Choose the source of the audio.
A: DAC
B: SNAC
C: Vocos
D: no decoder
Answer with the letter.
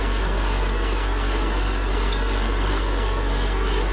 B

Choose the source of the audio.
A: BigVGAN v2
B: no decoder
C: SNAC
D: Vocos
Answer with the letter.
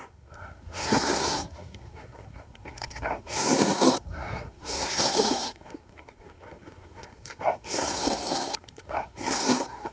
C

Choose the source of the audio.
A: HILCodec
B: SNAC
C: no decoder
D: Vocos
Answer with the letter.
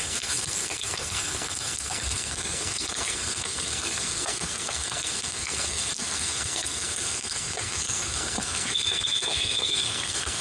B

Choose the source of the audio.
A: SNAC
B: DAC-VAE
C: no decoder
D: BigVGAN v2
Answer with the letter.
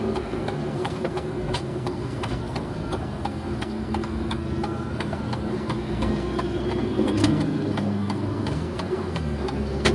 A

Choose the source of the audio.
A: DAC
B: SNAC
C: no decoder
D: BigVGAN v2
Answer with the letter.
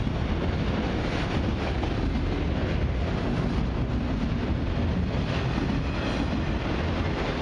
C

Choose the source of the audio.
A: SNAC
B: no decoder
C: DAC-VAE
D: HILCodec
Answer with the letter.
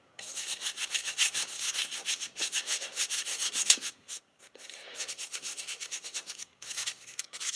A